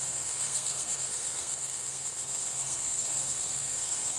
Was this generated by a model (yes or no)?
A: yes